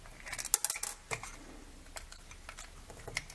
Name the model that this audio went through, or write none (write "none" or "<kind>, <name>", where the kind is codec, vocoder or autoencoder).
none